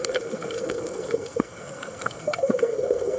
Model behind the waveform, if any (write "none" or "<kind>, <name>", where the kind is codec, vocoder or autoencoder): codec, SNAC